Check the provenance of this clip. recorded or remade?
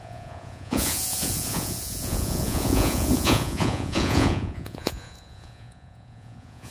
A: remade